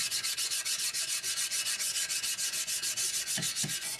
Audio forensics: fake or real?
fake